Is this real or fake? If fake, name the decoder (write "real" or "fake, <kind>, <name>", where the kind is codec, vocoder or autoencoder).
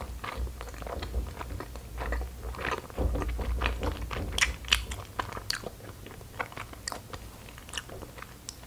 real